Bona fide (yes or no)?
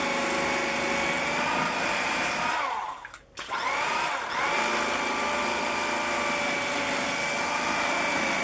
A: yes